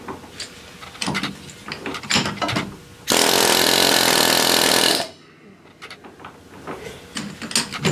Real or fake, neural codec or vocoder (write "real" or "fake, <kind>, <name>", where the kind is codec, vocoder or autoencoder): real